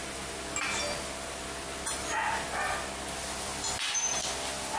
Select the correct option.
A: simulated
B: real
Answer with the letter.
B